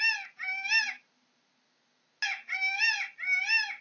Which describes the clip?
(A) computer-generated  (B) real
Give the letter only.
B